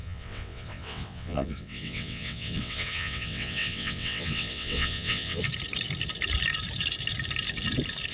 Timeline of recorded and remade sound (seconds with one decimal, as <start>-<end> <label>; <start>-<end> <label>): 0.0-5.4 remade; 5.4-8.1 recorded